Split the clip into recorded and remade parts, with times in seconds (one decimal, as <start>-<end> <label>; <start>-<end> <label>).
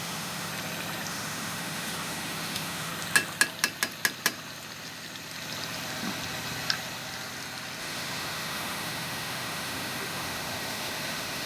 0.0-0.5 remade; 0.5-1.1 recorded; 1.1-2.9 remade; 2.9-7.8 recorded; 7.8-11.5 remade